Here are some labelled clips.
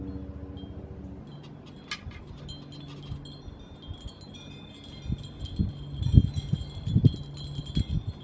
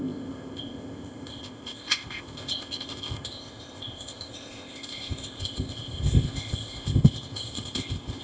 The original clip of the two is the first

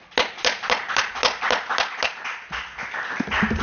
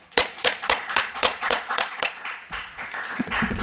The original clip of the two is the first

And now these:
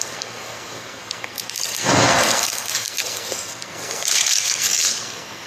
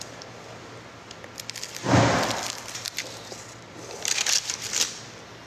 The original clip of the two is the second